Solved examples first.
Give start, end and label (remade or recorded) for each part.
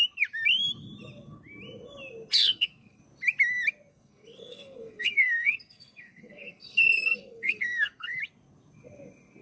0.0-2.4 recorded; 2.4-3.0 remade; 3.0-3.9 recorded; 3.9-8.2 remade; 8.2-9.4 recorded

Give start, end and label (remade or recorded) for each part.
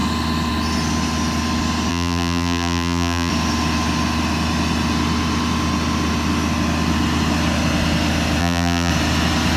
0.0-1.9 recorded; 1.9-3.3 remade; 3.3-8.4 recorded; 8.4-8.9 remade; 8.9-9.6 recorded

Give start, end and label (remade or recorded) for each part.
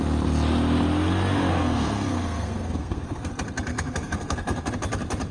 0.0-1.5 recorded; 1.5-3.3 remade; 3.3-3.7 recorded; 3.7-4.7 remade; 4.7-5.3 recorded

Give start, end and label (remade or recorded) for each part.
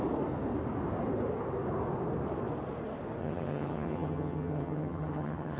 0.0-3.2 recorded; 3.2-5.6 remade